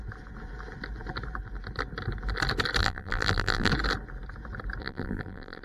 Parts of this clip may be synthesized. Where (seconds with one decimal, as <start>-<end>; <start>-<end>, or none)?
2.8-3.7; 4.8-5.6